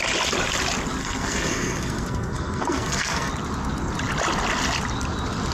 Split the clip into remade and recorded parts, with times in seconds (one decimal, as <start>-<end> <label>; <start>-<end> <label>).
0.0-1.0 recorded; 1.0-3.3 remade; 3.3-5.5 recorded